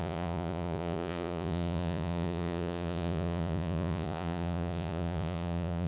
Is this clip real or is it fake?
fake